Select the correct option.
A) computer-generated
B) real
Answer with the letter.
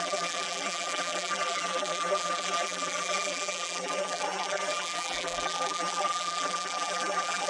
A